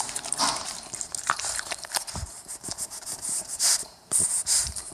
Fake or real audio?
fake